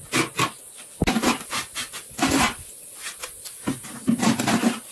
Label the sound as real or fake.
real